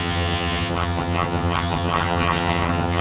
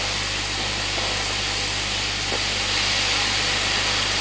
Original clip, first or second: second